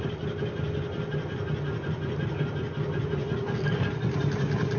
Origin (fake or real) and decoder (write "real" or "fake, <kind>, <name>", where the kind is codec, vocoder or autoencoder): real